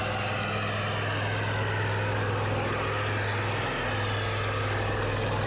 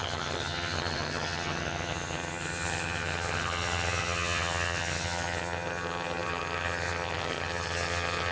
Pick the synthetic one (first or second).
second